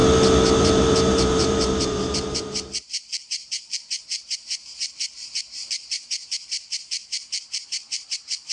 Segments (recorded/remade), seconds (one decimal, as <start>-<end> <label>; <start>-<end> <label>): 0.0-0.6 recorded; 0.6-8.5 remade